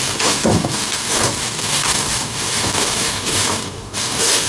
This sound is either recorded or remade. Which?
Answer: remade